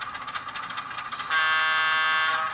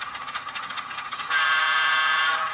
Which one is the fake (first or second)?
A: second